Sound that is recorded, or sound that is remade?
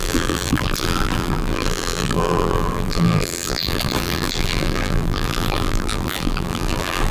remade